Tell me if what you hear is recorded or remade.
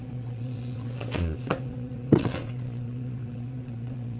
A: remade